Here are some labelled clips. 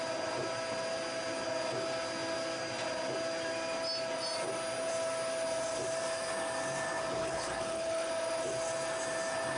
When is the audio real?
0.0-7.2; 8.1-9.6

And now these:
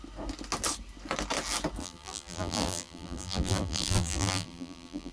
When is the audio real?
0.0-1.8

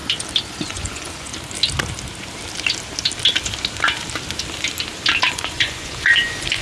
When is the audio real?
0.0-0.5; 1.3-5.3

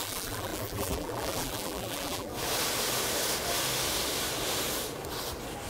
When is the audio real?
2.3-5.7

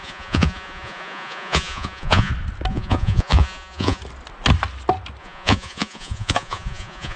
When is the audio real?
2.3-2.7; 4.0-5.2

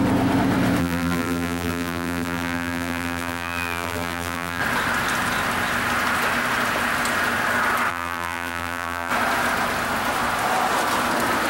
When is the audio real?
0.0-0.8; 4.6-7.9; 9.1-11.5